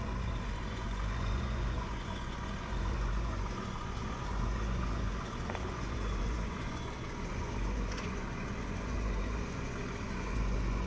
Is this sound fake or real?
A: fake